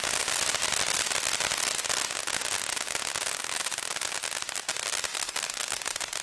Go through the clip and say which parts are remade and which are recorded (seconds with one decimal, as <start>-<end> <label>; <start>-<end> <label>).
0.0-5.1 recorded; 5.1-5.8 remade; 5.8-6.2 recorded